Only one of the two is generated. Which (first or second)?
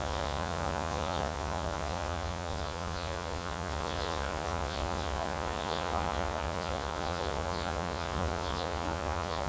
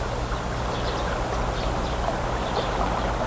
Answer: first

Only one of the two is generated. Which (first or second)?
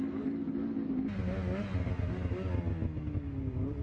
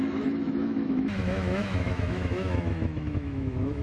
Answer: second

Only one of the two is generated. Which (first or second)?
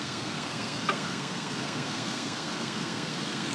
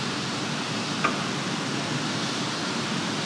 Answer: first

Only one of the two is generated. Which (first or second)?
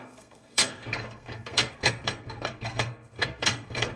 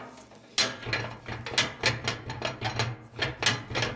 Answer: first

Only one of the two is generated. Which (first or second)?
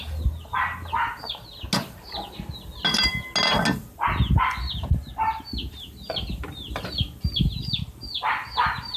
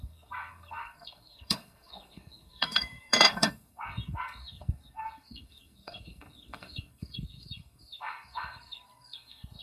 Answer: second